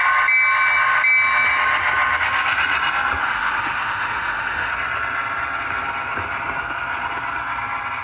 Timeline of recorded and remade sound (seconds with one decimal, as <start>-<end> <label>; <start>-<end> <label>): 0.0-3.2 recorded; 3.2-4.7 remade; 4.7-8.0 recorded

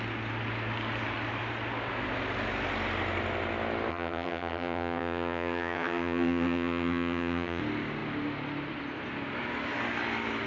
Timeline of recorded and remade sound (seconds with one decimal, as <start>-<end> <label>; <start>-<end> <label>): 0.0-3.9 recorded; 3.9-7.6 remade; 7.6-10.5 recorded